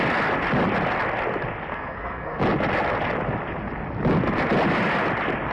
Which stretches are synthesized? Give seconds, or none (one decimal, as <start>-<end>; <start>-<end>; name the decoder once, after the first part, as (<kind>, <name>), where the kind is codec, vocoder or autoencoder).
1.7-2.4 (codec, SNAC)

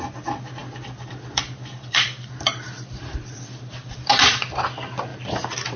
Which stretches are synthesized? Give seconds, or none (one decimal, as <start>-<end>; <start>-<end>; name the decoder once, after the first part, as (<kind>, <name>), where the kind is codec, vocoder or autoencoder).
0.6-4.1 (vocoder, BigVGAN v2); 5.1-5.8